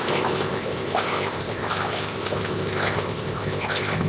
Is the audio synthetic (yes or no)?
yes